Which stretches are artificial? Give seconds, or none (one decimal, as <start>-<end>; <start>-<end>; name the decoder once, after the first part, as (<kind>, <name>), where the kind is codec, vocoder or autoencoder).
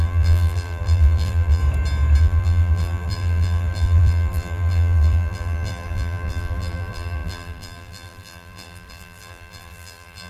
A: 0.0-1.6 (vocoder, BigVGAN v2); 2.2-10.3